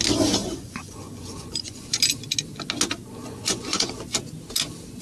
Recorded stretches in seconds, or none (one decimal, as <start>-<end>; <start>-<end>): 0.0-0.4; 2.0-3.2; 4.0-5.0